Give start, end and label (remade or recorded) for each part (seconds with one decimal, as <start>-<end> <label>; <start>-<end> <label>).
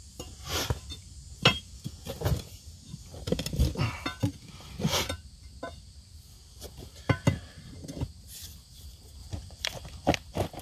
0.0-9.2 recorded; 9.2-10.1 remade; 10.1-10.6 recorded